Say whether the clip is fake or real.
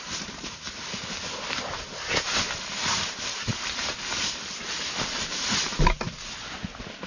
real